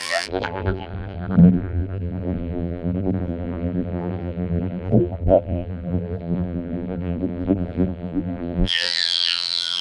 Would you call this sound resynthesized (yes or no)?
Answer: yes